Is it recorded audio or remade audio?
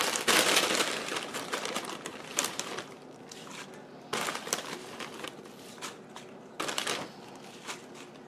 recorded